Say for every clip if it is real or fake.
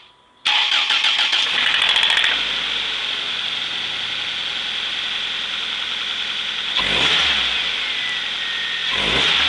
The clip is real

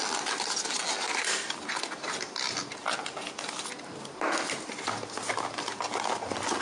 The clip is real